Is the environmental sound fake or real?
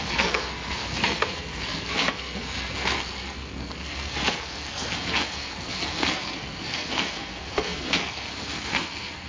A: fake